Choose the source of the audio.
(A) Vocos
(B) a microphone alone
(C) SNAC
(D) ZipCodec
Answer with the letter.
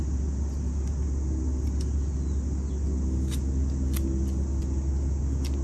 B